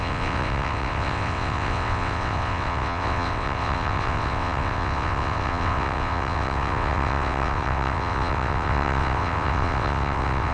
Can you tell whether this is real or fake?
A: fake